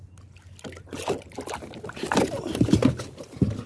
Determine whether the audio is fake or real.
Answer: real